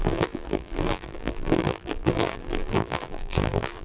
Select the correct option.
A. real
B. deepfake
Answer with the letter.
B